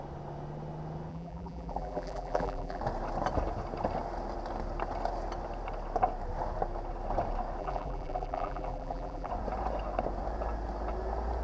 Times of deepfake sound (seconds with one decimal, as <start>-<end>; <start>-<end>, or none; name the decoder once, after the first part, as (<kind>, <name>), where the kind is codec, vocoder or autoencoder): 1.1-2.8 (vocoder, BigVGAN v2); 7.6-9.3